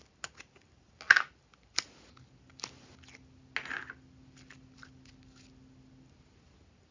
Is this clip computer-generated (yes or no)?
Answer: no